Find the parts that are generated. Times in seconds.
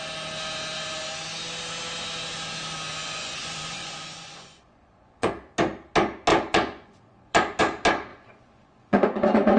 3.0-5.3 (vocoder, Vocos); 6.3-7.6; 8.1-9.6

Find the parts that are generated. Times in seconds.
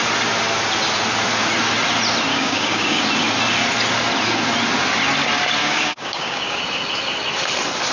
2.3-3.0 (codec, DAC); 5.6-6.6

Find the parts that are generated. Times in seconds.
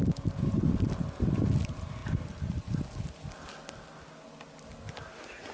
none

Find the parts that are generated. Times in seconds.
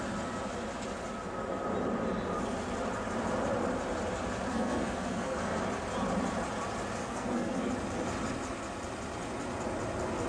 4.5-5.6 (codec, SNAC); 7.0-7.7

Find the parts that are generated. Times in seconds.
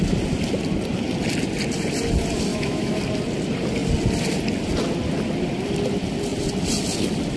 2.5-3.0 (autoencoder, DAC-VAE)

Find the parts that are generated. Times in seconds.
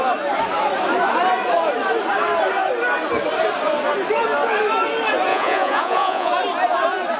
5.3-6.3 (vocoder, Vocos)